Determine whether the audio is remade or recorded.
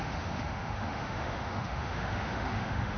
remade